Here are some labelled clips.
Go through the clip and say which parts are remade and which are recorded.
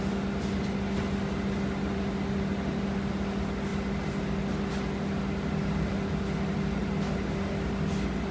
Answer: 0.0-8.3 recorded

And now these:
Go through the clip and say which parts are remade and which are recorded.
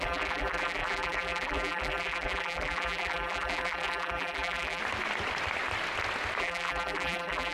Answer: 0.0-4.8 remade; 4.8-6.4 recorded; 6.4-7.5 remade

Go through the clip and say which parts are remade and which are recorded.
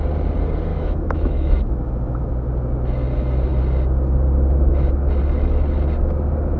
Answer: 0.0-0.7 recorded; 0.7-2.3 remade; 2.3-6.6 recorded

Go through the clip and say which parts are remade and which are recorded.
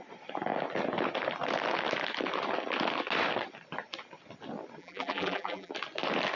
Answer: 0.0-4.8 recorded; 4.8-5.7 remade; 5.7-6.4 recorded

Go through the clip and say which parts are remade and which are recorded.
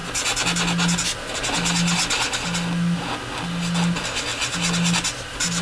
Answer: 0.0-5.6 recorded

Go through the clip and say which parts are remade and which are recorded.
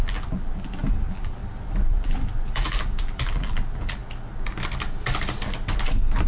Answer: 0.0-1.4 remade; 1.4-1.9 recorded; 1.9-4.0 remade; 4.0-6.3 recorded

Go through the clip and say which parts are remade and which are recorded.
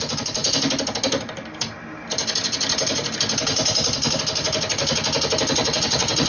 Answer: 0.0-5.6 recorded; 5.6-6.3 remade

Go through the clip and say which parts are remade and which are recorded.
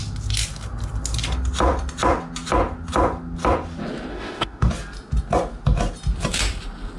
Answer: 0.0-4.1 recorded; 4.1-4.7 remade; 4.7-7.0 recorded